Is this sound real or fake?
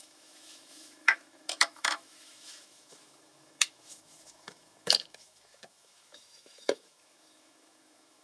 fake